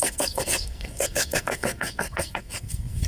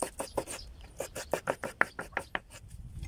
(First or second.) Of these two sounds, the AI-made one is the first